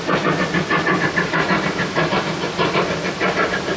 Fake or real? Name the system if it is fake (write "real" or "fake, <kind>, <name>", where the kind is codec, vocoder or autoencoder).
real